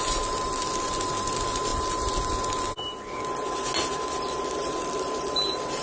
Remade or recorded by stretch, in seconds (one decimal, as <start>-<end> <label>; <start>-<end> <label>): 0.0-1.7 remade; 1.7-4.5 recorded; 4.5-5.8 remade